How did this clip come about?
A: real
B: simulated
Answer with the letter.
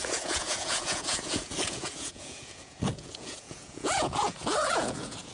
B